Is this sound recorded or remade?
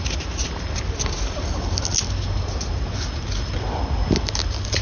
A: recorded